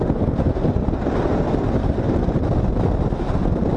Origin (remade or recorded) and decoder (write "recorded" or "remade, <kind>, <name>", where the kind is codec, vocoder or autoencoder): recorded